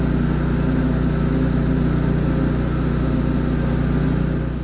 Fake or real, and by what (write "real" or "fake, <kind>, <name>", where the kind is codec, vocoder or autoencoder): real